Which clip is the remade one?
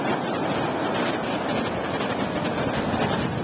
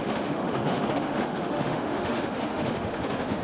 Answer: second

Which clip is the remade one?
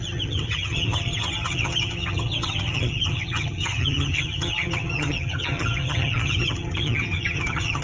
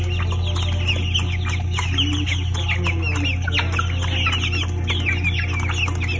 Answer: first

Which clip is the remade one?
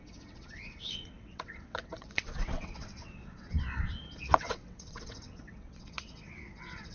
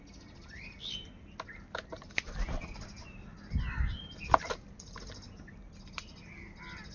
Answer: first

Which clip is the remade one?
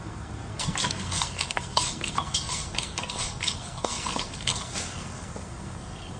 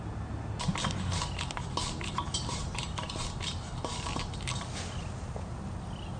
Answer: first